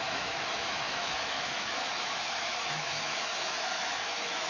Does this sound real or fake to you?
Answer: fake